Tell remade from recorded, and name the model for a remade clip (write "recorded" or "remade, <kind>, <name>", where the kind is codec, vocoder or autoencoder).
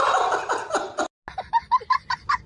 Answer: recorded